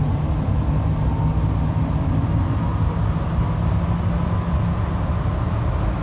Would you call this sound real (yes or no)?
yes